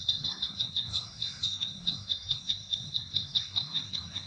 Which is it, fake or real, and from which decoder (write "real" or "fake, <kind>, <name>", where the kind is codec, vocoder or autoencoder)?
fake, codec, SNAC